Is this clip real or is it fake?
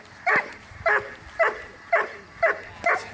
real